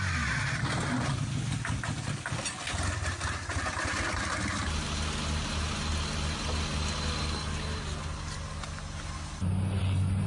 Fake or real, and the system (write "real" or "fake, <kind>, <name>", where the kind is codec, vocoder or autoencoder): real